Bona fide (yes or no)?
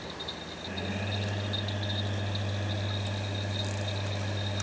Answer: yes